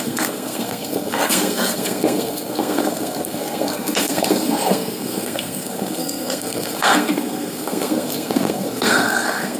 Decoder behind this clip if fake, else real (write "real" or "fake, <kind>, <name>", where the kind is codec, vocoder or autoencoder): fake, codec, SNAC